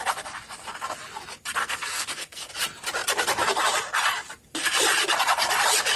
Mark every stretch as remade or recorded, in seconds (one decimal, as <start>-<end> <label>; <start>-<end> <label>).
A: 0.0-1.6 recorded; 1.6-2.5 remade; 2.5-6.0 recorded